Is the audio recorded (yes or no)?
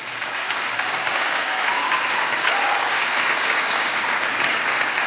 no